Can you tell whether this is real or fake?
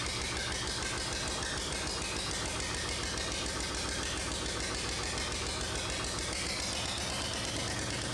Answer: real